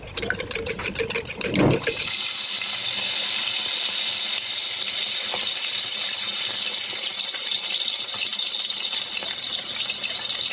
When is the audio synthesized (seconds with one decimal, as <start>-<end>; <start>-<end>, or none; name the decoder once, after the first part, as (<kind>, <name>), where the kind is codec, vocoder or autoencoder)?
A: none